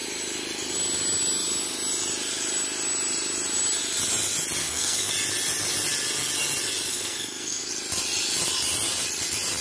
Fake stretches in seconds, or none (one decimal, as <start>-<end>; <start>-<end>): 4.6-5.1; 6.9-7.7